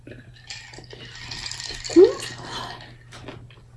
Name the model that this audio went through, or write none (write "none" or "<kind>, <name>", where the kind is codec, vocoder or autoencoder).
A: none